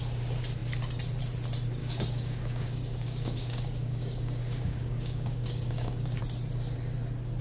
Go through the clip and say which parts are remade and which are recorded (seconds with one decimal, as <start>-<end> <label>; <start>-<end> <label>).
0.0-1.8 recorded; 1.8-6.2 remade; 6.2-7.4 recorded